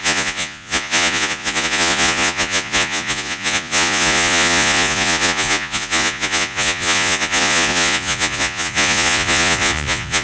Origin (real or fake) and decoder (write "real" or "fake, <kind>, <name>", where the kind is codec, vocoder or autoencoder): fake, vocoder, Vocos